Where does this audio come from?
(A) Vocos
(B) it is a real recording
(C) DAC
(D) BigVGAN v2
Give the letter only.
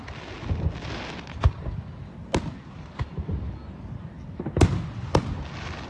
B